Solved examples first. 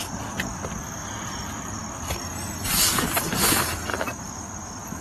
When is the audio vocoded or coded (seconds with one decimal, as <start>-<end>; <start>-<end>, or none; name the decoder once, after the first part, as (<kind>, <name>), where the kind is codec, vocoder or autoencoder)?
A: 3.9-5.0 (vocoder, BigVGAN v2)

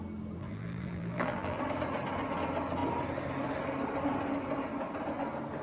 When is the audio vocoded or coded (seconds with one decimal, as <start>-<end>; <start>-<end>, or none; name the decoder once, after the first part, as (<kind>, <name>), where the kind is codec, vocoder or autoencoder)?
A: 0.4-1.6 (vocoder, BigVGAN v2)

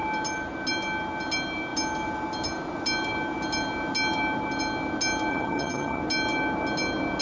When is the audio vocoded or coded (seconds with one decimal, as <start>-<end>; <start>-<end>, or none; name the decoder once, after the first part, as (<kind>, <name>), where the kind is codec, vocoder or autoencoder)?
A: 5.3-6.0 (vocoder, HiFi-GAN)

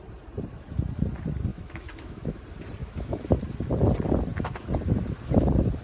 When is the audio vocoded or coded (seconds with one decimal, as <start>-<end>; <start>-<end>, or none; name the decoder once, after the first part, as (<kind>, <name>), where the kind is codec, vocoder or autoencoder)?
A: 1.5-2.4 (autoencoder, DAC-VAE); 2.8-3.4